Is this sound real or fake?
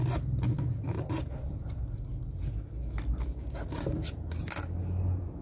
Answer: real